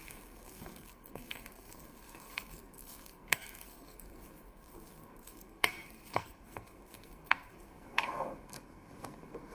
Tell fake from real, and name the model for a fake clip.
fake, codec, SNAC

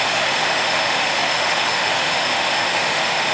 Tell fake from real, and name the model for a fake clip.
fake, autoencoder, DAC-VAE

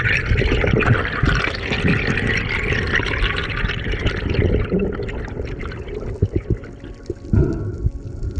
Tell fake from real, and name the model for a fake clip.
real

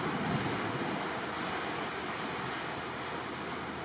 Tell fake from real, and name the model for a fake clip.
real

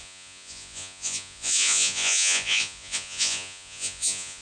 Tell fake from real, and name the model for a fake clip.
fake, vocoder, Vocos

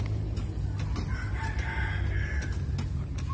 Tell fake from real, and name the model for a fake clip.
real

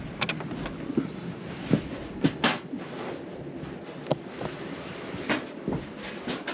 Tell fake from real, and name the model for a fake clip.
real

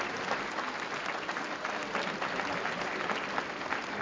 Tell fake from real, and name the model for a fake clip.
real